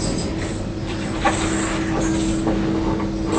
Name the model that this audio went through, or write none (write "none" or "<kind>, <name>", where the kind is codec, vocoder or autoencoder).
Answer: none